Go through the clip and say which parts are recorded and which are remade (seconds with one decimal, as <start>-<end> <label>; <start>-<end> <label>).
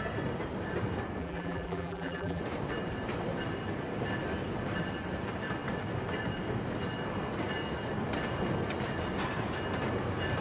0.0-1.2 recorded; 1.2-2.4 remade; 2.4-10.4 recorded